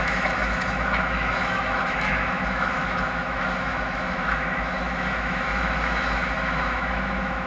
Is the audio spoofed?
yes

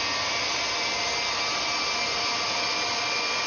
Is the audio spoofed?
no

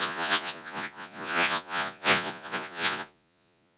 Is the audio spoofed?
yes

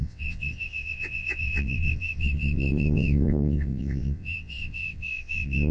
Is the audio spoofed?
yes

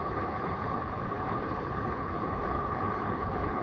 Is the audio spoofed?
yes